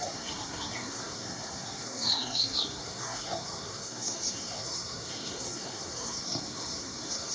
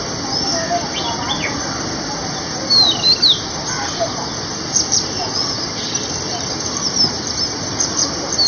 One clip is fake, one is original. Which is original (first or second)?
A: second